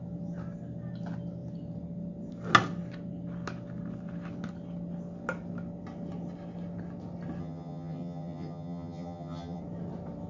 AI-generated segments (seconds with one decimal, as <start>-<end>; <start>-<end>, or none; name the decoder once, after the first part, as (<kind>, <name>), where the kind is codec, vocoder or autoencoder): 7.4-9.6 (vocoder, HiFi-GAN)